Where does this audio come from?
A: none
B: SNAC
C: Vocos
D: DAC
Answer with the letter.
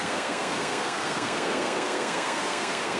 B